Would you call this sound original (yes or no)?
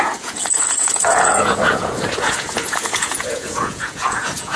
no